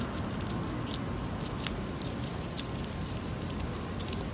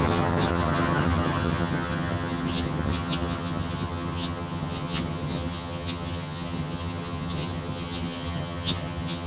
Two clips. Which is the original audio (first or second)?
first